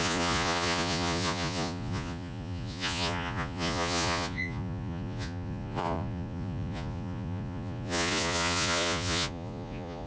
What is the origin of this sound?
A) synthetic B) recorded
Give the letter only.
A